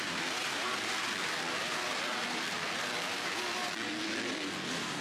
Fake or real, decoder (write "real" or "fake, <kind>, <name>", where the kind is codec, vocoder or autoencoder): fake, vocoder, BigVGAN v2